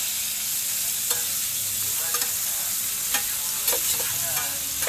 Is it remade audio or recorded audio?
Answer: recorded